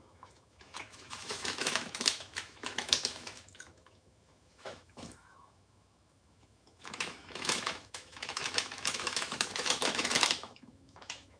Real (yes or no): no